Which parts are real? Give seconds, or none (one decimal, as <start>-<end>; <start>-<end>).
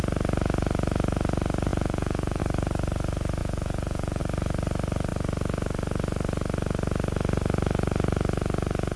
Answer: 0.0-1.7; 2.4-3.4; 4.2-9.0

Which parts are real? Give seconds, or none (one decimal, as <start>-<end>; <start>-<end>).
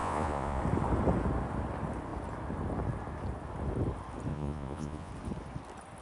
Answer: 0.6-4.3; 5.1-6.0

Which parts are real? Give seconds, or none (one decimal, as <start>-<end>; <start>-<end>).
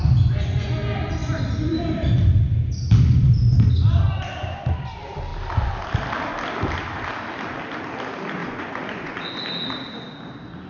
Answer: 0.7-8.4; 9.3-10.7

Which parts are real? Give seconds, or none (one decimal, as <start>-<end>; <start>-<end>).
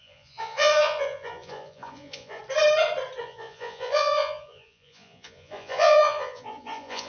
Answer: 2.4-3.2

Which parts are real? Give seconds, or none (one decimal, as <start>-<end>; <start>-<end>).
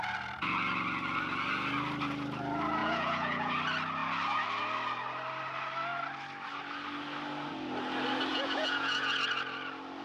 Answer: 0.0-2.8; 3.5-8.3; 9.2-10.0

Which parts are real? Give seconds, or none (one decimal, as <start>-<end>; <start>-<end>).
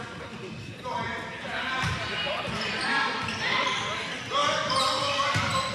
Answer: 0.0-5.7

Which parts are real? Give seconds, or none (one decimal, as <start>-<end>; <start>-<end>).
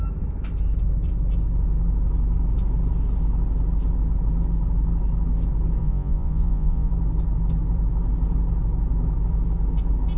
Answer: 0.0-5.8; 6.9-10.2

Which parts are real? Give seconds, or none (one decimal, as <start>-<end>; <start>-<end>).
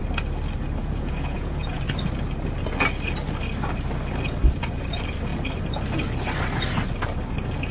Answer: 0.0-0.8; 1.8-7.7